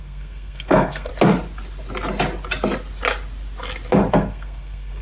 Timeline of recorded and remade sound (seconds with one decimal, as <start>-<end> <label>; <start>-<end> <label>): 0.0-1.1 remade; 1.1-4.1 recorded; 4.1-5.0 remade